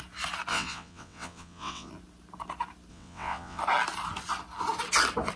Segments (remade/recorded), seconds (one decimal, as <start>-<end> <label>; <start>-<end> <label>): 0.0-0.5 recorded; 0.5-1.9 remade; 1.9-2.9 recorded; 2.9-3.6 remade; 3.6-5.4 recorded